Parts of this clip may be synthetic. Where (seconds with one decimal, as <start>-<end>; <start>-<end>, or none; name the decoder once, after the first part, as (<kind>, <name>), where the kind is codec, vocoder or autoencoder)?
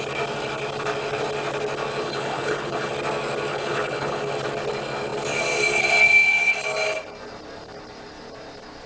2.0-2.9 (codec, HILCodec); 3.5-4.3